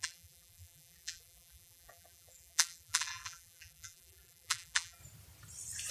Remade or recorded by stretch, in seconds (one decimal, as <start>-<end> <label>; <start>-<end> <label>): 0.0-5.0 remade; 5.0-5.9 recorded